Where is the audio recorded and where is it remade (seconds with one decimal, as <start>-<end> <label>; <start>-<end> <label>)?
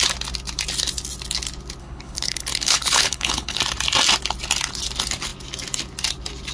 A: 0.0-1.8 recorded; 1.8-3.6 remade; 3.6-6.5 recorded